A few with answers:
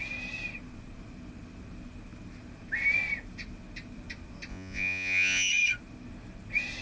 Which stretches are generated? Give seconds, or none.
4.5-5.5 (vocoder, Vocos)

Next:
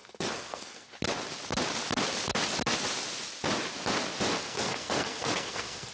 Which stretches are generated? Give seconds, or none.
0.0-0.9 (codec, SNAC); 4.4-5.9

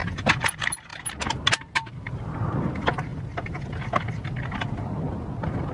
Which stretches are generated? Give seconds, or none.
none

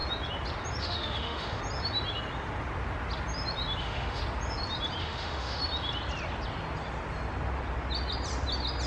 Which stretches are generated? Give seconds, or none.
0.8-1.6 (autoencoder, DAC-VAE); 3.8-4.2; 5.0-5.6

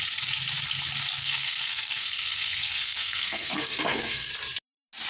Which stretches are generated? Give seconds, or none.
1.2-4.3 (codec, SNAC)

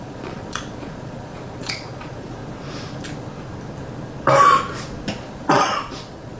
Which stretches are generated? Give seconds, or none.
0.0-2.4 (vocoder, Vocos); 5.1-6.4

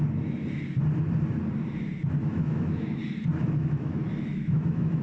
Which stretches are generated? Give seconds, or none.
2.2-3.0 (autoencoder, DAC-VAE); 3.4-5.0

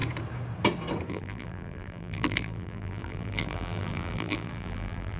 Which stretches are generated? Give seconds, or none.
1.1-5.2 (vocoder, BigVGAN v2)